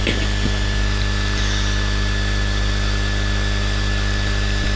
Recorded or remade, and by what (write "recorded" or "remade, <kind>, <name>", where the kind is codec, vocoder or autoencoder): recorded